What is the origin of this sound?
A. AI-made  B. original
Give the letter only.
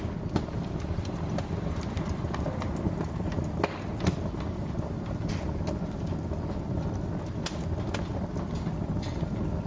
B